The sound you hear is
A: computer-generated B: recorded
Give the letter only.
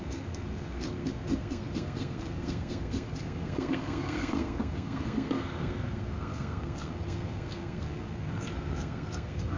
A